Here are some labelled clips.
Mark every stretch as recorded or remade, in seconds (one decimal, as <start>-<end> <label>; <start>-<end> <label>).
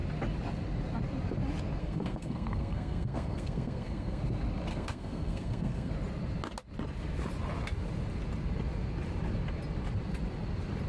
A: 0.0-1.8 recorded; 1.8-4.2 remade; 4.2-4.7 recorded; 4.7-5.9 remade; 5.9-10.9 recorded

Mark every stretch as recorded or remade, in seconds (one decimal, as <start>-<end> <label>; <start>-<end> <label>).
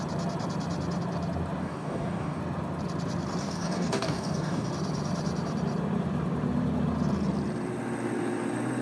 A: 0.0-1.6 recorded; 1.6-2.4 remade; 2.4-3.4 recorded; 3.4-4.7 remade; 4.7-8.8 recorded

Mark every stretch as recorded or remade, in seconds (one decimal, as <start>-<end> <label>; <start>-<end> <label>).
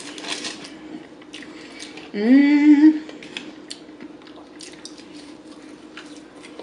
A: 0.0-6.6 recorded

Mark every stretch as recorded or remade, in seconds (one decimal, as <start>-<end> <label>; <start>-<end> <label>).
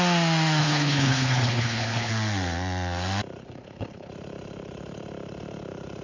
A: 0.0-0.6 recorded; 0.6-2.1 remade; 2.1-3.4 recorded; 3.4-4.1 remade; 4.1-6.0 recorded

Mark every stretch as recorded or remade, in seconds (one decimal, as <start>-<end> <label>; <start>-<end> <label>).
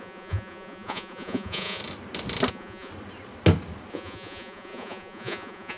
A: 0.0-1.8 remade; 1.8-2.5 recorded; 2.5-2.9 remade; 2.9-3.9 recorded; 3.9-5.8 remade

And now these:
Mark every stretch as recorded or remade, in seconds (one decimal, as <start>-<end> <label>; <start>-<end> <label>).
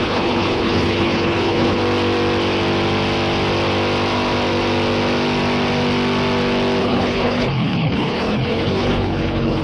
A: 0.0-1.8 remade; 1.8-6.8 recorded; 6.8-9.6 remade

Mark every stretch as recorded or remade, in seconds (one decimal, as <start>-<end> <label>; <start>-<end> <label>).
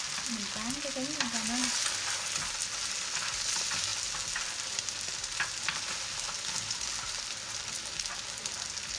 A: 0.0-9.0 recorded